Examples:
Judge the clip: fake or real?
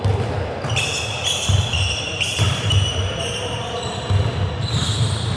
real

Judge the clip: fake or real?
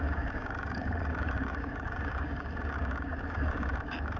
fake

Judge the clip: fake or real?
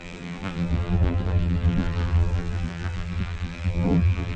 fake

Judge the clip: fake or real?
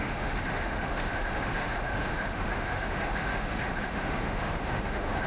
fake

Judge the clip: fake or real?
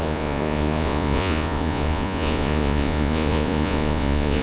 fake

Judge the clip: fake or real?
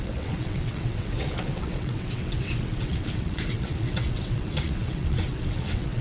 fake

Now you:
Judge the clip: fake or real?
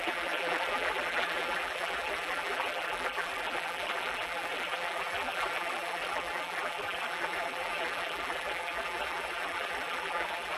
fake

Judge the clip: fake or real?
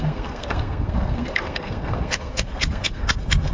fake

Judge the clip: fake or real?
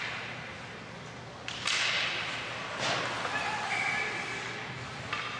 real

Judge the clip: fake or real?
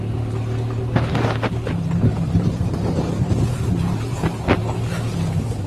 real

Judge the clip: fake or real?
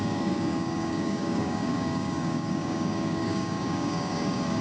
fake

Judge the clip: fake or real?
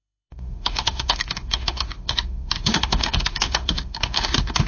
fake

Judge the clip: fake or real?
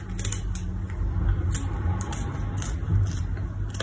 real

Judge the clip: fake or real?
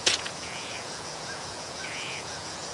fake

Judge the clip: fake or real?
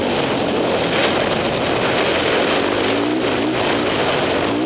real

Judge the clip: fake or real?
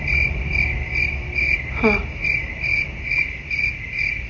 real